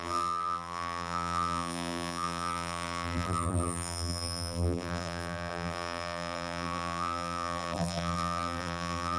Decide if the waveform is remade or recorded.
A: remade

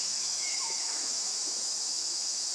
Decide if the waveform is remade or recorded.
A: remade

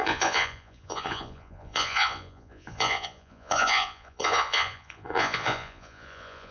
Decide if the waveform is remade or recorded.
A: remade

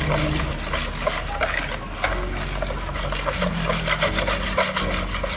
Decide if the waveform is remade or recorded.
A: recorded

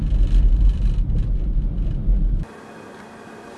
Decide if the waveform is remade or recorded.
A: recorded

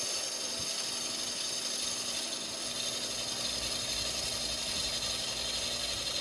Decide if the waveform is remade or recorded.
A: recorded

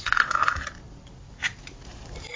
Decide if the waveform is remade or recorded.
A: recorded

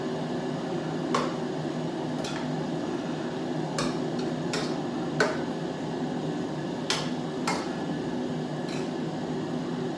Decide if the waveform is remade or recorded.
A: recorded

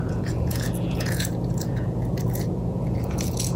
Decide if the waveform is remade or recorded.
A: remade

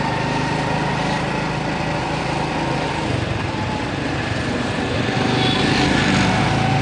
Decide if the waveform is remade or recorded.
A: recorded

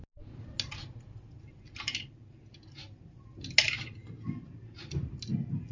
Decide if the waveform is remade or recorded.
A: recorded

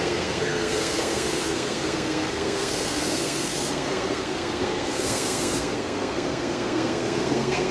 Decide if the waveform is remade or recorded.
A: remade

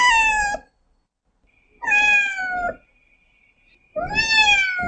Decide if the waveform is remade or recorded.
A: recorded